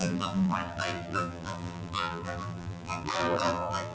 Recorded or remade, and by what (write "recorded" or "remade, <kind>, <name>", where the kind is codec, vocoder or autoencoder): remade, vocoder, BigVGAN v2